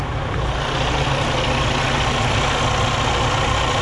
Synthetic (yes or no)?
no